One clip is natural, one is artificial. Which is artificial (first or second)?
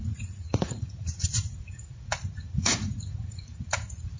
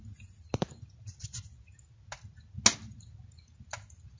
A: first